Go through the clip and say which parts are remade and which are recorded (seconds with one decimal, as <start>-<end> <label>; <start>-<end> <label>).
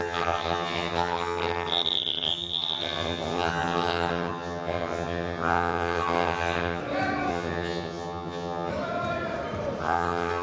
0.0-6.8 remade; 6.8-7.3 recorded; 7.3-8.7 remade; 8.7-9.8 recorded; 9.8-10.4 remade